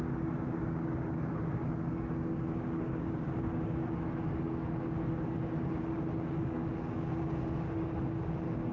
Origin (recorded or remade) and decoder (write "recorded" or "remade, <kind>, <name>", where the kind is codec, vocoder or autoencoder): remade, codec, DAC